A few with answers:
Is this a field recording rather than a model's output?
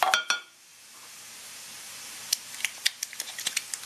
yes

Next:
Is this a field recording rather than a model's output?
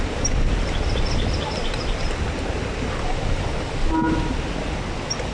yes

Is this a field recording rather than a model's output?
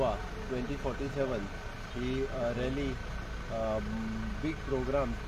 yes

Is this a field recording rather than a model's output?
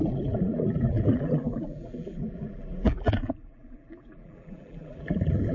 no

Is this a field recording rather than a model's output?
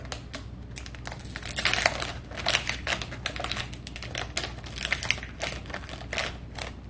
yes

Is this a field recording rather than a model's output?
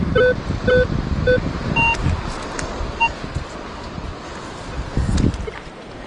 yes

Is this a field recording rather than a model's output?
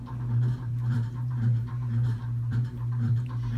no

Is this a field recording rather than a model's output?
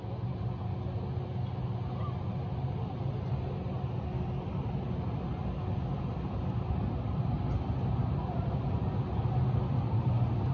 yes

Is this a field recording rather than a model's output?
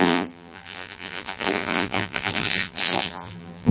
no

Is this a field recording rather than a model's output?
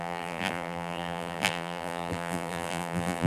no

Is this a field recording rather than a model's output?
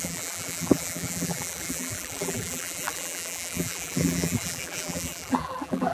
no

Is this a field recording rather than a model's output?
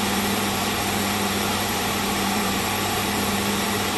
no